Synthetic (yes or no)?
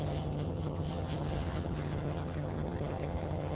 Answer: yes